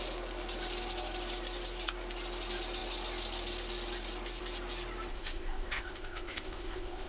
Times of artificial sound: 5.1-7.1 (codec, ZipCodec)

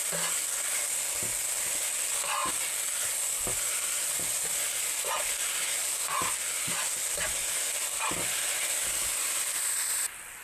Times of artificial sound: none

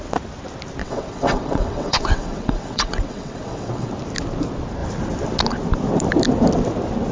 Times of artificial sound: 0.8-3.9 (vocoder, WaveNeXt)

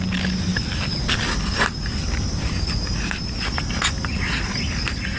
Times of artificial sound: none

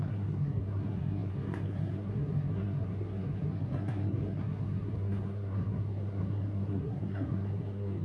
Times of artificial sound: 0.0-8.0 (codec, SNAC)

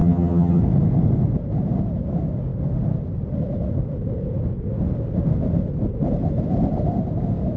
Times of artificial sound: 0.0-0.6 (vocoder, HiFi-GAN)